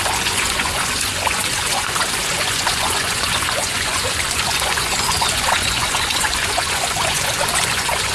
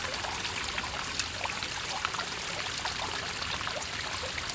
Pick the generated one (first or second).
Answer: first